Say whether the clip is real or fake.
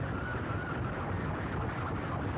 real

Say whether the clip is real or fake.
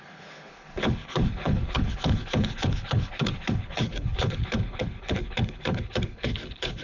fake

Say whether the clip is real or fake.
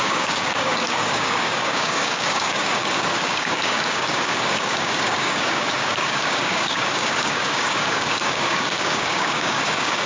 fake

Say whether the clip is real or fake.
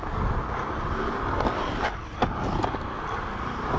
real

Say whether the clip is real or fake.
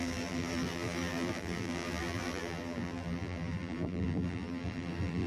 fake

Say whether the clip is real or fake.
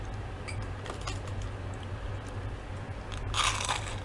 real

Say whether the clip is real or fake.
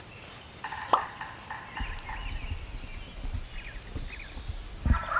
real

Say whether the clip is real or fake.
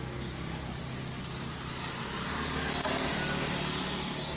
real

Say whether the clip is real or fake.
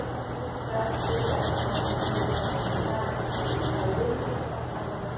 real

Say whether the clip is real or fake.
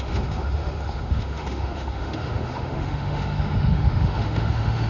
fake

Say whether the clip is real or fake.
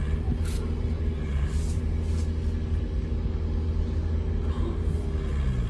real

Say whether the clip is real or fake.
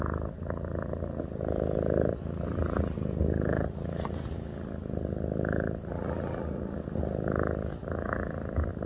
real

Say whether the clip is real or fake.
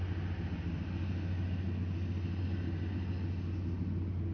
real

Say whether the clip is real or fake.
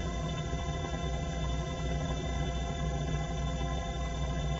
fake